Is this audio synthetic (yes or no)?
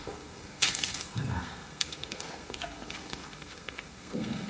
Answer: yes